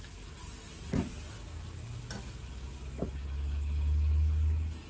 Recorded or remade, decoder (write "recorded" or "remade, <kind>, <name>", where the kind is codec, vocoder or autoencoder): recorded